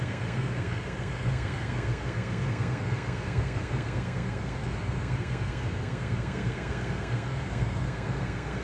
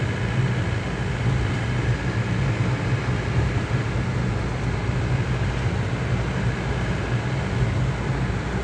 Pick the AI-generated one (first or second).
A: first